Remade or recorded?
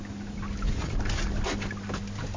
recorded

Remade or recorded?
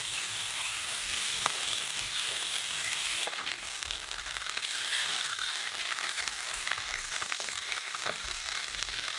remade